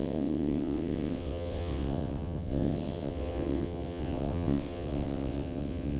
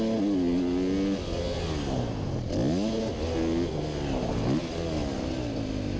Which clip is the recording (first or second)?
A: second